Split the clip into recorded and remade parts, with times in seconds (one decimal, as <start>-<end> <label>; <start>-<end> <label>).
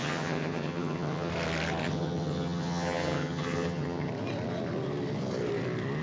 0.0-1.3 remade; 1.3-1.8 recorded; 1.8-4.1 remade; 4.1-6.0 recorded